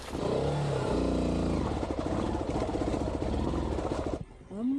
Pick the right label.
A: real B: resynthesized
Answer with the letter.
A